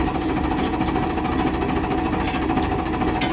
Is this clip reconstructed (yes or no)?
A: no